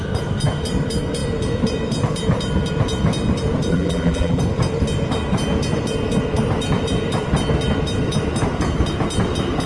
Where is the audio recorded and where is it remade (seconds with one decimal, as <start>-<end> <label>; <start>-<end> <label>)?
0.0-3.7 recorded; 3.7-4.4 remade; 4.4-9.7 recorded